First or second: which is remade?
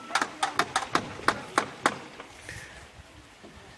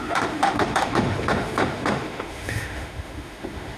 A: second